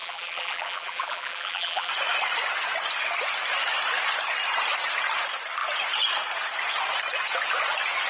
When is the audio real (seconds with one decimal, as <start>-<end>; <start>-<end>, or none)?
1.9-8.1